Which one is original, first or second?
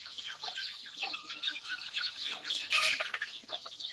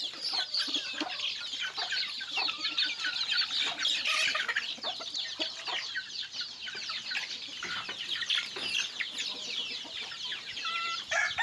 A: second